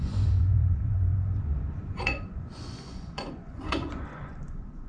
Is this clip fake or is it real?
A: fake